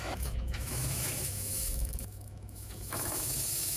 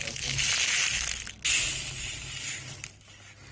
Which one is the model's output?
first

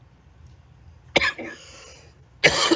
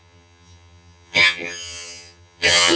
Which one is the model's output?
second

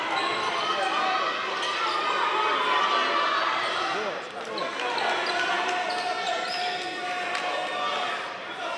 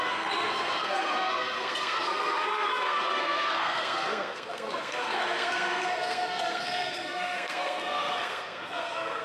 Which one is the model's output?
second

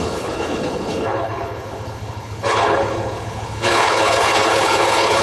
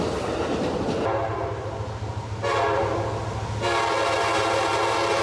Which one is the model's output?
first